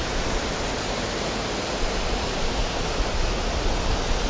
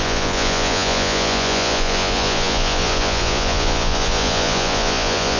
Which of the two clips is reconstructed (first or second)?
second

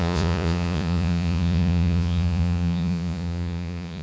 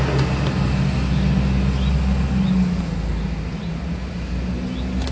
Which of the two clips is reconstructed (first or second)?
first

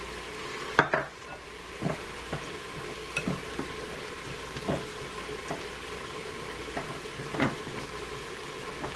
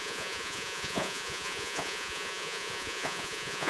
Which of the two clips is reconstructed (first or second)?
second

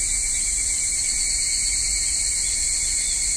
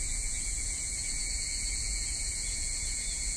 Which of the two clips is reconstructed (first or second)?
second